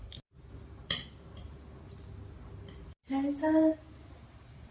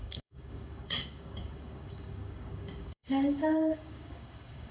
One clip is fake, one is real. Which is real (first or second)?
first